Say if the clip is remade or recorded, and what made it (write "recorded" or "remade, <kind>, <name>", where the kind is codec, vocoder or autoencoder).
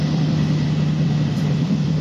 remade, vocoder, BigVGAN v2